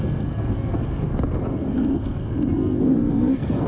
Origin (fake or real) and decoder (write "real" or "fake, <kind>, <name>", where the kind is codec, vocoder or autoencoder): fake, codec, SNAC